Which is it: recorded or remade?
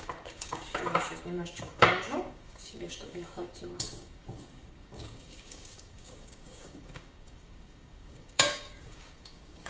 remade